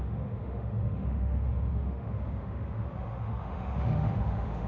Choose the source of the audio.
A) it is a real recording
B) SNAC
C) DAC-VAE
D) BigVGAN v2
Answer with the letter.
C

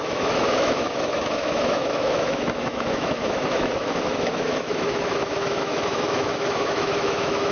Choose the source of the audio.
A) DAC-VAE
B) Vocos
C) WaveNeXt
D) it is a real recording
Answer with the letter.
A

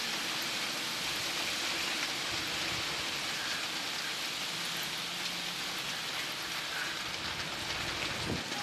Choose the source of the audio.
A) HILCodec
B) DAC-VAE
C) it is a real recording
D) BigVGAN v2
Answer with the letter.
C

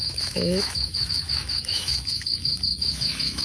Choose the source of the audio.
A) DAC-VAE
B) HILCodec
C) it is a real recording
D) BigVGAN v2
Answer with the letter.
A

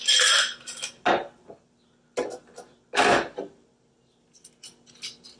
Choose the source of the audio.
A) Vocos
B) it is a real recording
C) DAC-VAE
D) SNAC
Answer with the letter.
B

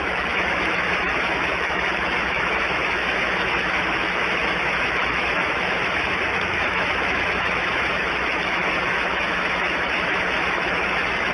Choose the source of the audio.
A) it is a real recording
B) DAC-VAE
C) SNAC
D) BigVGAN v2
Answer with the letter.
B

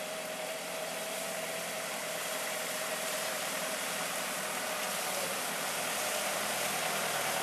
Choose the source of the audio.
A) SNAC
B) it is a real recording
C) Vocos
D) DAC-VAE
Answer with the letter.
B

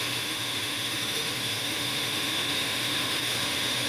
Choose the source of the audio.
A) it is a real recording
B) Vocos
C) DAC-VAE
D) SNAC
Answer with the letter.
C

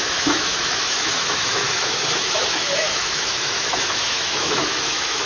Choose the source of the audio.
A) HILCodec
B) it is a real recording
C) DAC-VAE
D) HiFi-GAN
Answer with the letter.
C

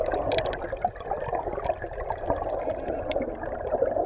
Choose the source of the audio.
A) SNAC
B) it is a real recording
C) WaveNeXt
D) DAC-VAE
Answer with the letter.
B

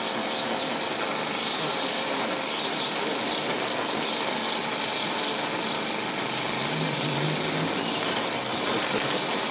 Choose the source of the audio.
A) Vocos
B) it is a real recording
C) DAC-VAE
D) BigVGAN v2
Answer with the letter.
B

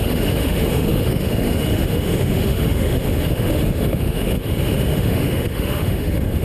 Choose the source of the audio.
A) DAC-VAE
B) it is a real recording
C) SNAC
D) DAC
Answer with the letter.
A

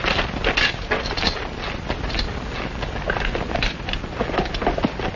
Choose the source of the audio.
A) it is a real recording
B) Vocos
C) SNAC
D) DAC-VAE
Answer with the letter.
A